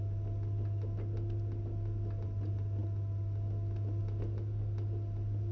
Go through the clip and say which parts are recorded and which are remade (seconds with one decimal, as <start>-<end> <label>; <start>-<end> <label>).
0.0-5.5 recorded